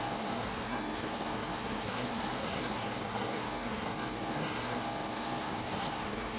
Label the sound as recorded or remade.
remade